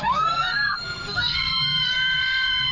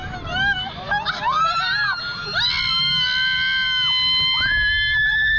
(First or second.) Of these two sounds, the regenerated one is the first